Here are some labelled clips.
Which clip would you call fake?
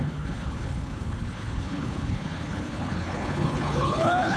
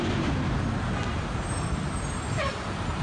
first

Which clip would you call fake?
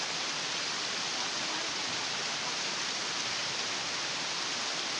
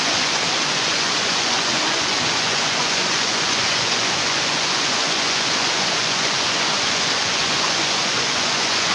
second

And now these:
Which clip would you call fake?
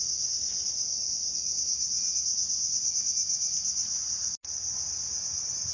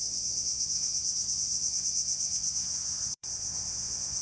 second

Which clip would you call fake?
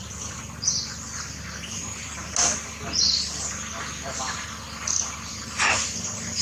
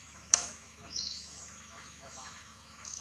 second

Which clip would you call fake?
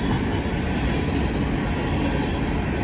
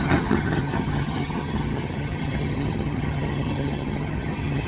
second